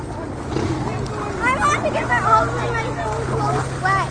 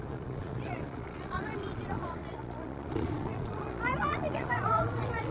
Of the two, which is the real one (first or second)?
first